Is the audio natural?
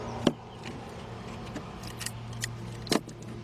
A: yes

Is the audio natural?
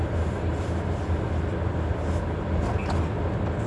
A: yes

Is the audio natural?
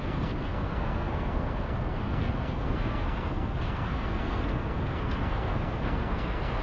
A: no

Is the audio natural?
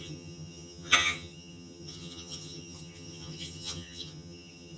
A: no